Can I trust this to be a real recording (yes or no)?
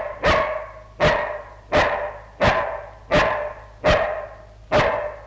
yes